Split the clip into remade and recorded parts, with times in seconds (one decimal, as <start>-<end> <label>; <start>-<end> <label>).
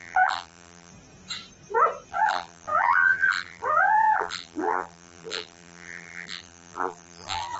0.0-0.9 remade; 0.9-2.1 recorded; 2.1-7.6 remade